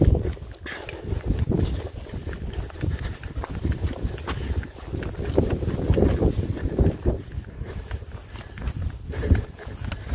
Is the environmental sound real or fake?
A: real